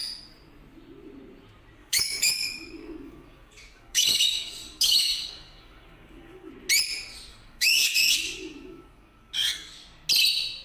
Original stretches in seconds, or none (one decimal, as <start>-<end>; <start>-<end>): 0.0-1.8; 6.5-7.3; 9.7-10.6